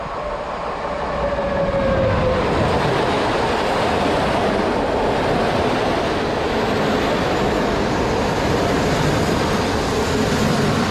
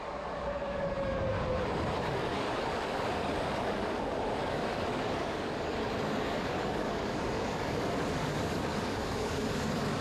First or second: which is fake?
second